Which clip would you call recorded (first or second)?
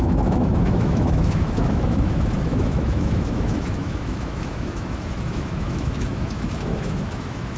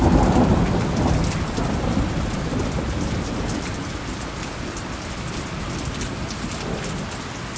second